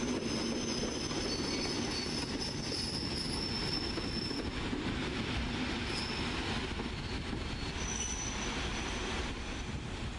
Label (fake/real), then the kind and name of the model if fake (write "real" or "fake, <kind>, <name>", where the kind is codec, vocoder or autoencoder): real